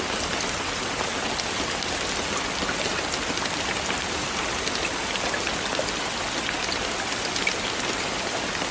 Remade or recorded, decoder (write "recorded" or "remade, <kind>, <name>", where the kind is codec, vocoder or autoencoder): recorded